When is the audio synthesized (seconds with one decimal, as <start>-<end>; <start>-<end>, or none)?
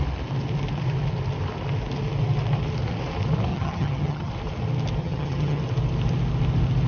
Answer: 3.5-4.3; 5.0-5.6